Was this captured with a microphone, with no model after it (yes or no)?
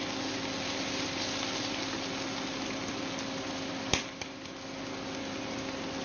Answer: yes